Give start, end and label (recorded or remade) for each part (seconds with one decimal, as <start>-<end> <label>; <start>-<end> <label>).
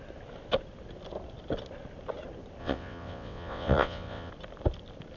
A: 0.0-2.6 recorded; 2.6-4.3 remade; 4.3-5.2 recorded